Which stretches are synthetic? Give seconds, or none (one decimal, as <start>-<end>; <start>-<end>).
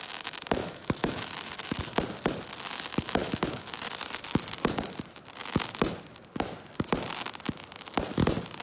0.6-1.8; 3.2-4.4